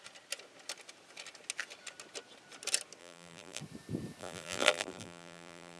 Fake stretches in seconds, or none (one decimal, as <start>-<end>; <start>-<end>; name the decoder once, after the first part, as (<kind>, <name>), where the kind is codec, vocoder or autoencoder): 3.0-3.6 (vocoder, BigVGAN v2); 4.2-5.8